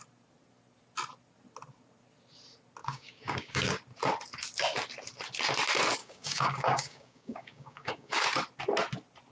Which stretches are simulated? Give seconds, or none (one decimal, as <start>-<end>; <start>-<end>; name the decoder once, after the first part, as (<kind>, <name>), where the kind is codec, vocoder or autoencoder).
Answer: 2.8-3.8 (codec, DAC); 6.0-8.2